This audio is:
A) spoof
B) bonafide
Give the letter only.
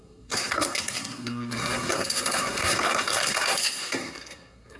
A